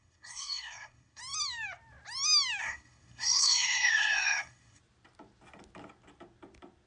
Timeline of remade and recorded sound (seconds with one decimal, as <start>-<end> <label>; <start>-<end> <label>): 0.0-1.2 remade; 1.2-2.6 recorded; 2.6-4.8 remade; 4.8-6.9 recorded